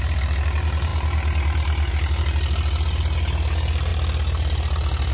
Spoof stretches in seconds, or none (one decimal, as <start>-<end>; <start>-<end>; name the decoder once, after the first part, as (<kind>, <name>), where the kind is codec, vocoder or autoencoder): none